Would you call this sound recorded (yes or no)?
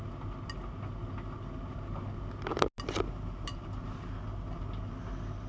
yes